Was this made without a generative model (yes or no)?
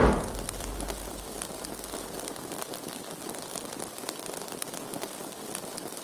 yes